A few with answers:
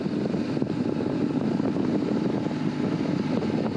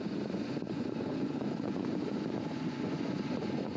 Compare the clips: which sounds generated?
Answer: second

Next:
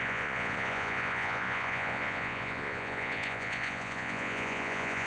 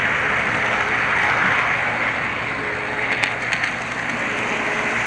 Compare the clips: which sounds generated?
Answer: first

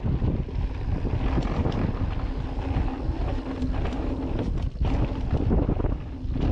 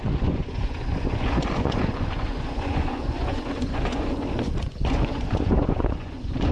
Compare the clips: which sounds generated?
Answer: second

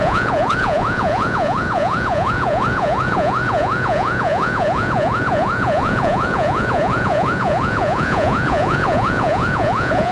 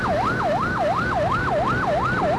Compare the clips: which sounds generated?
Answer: first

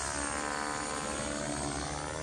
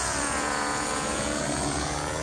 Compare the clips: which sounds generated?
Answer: second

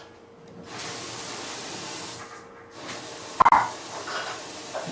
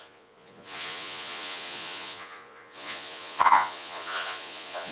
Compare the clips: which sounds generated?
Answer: second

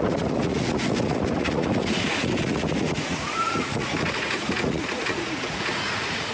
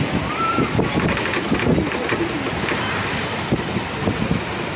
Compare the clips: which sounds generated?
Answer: first